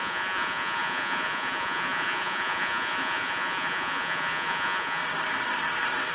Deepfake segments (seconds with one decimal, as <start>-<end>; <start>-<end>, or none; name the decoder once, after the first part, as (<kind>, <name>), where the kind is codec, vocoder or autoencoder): 0.0-5.0 (vocoder, Vocos)